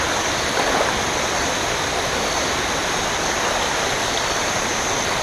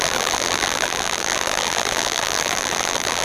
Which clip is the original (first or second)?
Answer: first